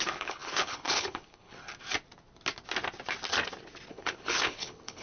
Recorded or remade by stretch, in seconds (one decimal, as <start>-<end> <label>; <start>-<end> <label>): 0.0-1.7 remade; 1.7-3.9 recorded; 3.9-5.0 remade

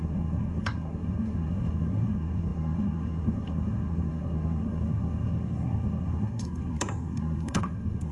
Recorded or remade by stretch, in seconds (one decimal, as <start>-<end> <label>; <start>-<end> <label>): 0.0-8.1 remade

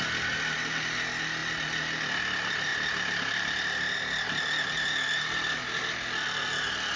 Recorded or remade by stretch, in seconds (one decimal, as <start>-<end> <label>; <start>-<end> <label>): 0.0-7.0 recorded

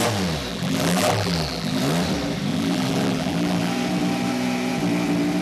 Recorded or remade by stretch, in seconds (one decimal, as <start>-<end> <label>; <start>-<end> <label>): 0.0-0.5 recorded; 0.5-1.8 remade; 1.8-2.5 recorded; 2.5-3.7 remade; 3.7-5.4 recorded

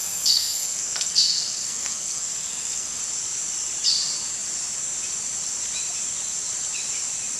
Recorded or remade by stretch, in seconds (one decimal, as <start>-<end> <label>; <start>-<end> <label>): 0.0-3.0 remade; 3.0-7.4 recorded

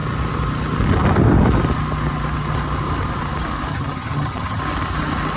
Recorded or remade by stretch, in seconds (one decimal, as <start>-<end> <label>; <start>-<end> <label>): 0.0-3.7 recorded; 3.7-4.6 remade; 4.6-5.4 recorded

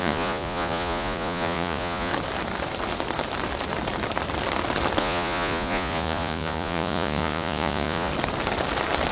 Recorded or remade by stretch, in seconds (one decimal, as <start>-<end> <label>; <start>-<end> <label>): 0.0-2.1 remade; 2.1-5.0 recorded; 5.0-8.1 remade; 8.1-9.1 recorded